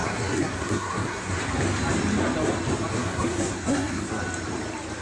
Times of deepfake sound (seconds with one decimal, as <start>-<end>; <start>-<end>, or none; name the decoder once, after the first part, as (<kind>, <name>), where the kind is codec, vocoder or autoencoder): 0.0-1.4 (codec, SNAC); 2.9-4.0